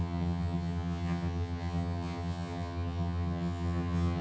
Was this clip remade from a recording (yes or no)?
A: yes